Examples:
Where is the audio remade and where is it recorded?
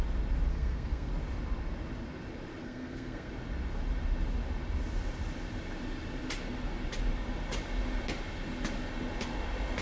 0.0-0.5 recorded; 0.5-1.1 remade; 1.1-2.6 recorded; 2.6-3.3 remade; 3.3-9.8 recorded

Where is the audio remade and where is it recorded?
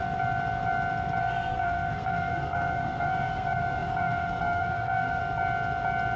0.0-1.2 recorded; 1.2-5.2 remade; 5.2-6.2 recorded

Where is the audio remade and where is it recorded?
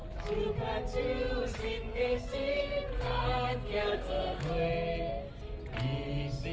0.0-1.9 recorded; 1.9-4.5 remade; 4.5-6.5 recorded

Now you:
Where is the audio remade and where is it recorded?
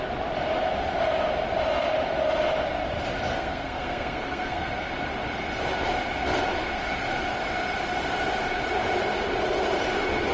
0.0-3.3 recorded; 3.3-4.7 remade; 4.7-10.3 recorded